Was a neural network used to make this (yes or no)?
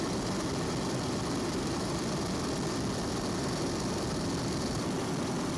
no